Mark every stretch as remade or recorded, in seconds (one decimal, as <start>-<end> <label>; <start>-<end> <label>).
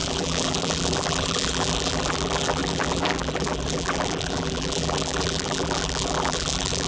0.0-6.9 remade